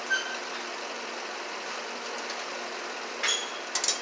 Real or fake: real